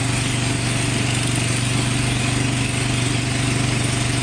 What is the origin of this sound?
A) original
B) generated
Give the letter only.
A